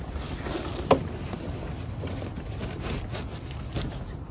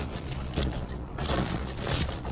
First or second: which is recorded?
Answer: first